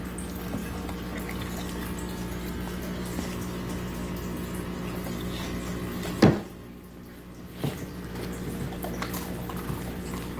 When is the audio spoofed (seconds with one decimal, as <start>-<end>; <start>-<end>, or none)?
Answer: none